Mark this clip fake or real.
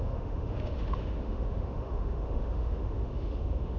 fake